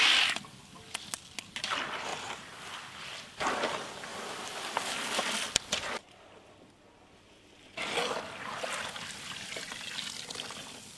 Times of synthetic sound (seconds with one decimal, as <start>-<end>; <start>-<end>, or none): none